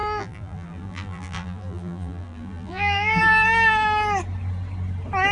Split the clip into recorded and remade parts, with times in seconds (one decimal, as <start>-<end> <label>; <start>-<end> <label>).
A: 0.0-3.2 remade; 3.2-5.3 recorded